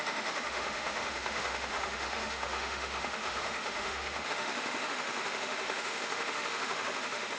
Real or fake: fake